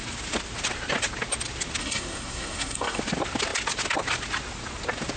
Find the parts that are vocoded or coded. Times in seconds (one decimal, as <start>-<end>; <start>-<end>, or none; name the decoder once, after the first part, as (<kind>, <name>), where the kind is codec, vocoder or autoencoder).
1.8-3.0 (codec, SNAC)